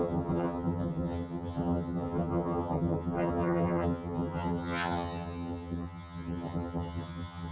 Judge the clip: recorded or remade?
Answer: remade